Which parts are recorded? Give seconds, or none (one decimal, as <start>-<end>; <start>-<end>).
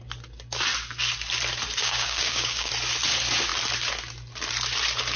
0.0-1.8; 2.7-5.2